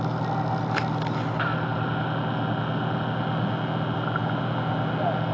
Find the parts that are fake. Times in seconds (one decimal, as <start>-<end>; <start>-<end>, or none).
none